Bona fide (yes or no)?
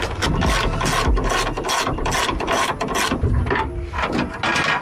yes